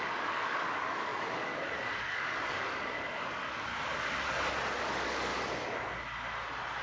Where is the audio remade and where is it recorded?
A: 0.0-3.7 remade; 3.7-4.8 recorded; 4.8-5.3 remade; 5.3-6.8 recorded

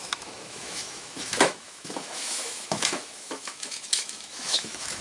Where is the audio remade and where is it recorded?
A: 0.0-5.0 remade